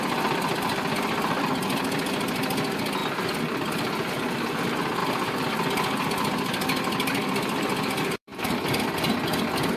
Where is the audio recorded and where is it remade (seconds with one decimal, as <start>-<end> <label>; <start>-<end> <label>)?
0.0-3.0 recorded; 3.0-4.5 remade; 4.5-5.0 recorded; 5.0-8.4 remade; 8.4-9.8 recorded